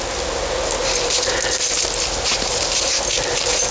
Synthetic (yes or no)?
no